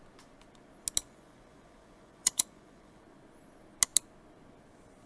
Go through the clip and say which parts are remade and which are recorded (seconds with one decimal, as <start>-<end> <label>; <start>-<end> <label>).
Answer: 0.0-1.0 recorded; 1.0-3.0 remade; 3.0-5.1 recorded